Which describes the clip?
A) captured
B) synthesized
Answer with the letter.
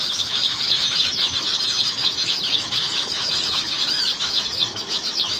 B